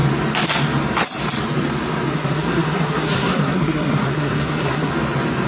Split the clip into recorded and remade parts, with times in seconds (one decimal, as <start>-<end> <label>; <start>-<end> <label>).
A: 0.0-2.1 recorded; 2.1-4.9 remade; 4.9-5.5 recorded